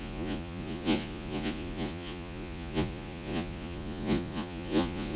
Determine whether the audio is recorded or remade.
remade